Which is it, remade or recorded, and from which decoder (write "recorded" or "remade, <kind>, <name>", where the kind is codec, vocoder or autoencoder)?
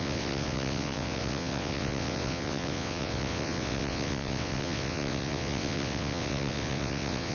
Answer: remade, vocoder, WaveNeXt